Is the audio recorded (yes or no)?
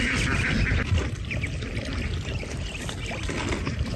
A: yes